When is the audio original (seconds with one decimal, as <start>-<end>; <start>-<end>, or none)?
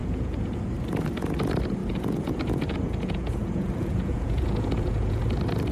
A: 0.7-1.8; 5.2-5.7